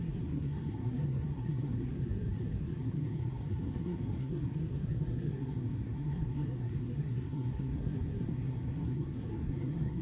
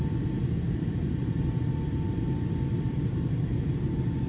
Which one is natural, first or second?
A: second